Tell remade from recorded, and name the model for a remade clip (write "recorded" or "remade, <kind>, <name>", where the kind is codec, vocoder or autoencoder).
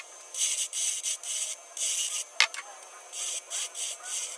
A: recorded